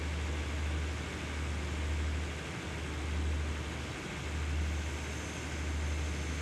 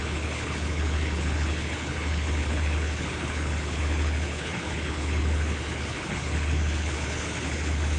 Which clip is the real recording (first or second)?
first